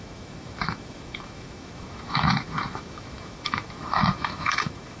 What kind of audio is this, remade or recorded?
remade